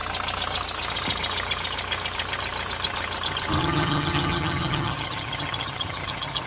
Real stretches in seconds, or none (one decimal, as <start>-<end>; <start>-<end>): 0.0-3.6